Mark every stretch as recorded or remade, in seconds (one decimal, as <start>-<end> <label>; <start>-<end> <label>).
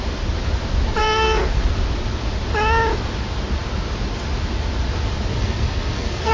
0.0-1.0 recorded; 1.0-1.7 remade; 1.7-5.3 recorded; 5.3-6.3 remade